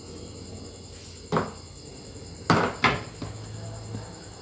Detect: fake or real real